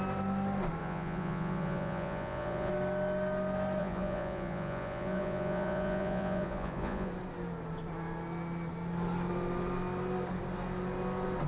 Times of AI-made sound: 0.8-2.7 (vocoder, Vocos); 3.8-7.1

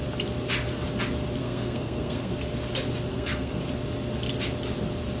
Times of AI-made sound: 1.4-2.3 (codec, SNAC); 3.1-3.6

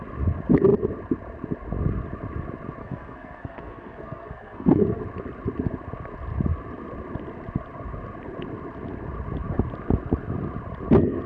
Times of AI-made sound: 2.8-5.0 (codec, SNAC)

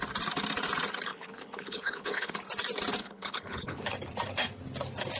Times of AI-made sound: 1.1-2.3 (codec, HILCodec); 3.0-3.8

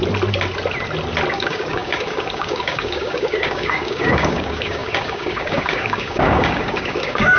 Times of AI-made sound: 1.3-7.4 (codec, DAC)

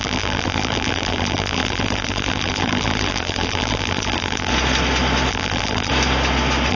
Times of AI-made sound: 0.0-4.5 (vocoder, BigVGAN v2); 5.3-5.9

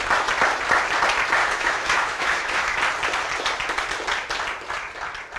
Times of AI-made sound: 1.4-2.8 (autoencoder, DAC-VAE)

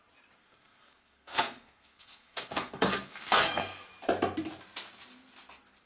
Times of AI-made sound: 0.4-3.9 (codec, SNAC)